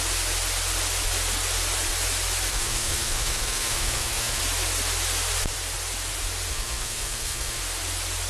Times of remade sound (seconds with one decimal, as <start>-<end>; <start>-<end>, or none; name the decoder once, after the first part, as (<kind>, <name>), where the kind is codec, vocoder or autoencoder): 2.5-4.4 (codec, SNAC); 6.5-7.6